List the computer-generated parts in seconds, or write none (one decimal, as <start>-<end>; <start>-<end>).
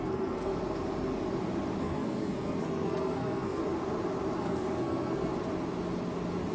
0.0-0.5; 1.8-3.6; 4.4-5.3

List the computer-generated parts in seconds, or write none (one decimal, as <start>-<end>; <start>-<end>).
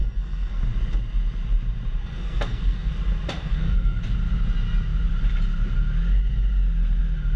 0.0-0.6; 2.0-2.9; 3.4-4.0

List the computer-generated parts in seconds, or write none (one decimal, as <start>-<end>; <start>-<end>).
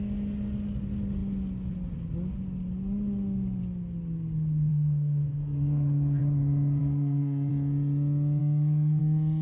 4.7-6.2; 6.8-7.5; 8.4-9.0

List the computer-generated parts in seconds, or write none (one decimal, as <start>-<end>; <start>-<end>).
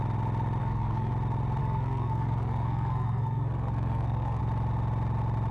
0.6-1.1; 1.6-4.4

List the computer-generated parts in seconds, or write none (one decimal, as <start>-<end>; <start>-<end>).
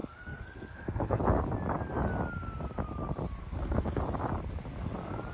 0.0-1.2; 3.4-4.0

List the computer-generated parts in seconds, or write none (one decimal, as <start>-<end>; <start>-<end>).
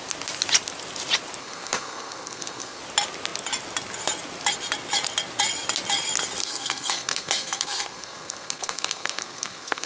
1.4-2.8; 6.4-9.9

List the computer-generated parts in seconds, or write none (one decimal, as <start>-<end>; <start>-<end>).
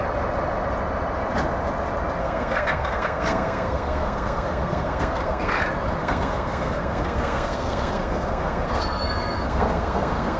2.2-5.6; 6.0-10.4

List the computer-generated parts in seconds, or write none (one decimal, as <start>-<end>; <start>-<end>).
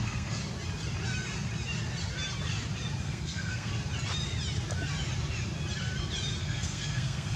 0.0-0.4; 3.0-3.7; 6.4-7.4